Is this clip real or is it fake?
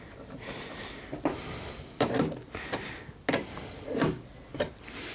real